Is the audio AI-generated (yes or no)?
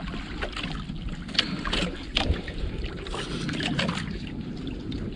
no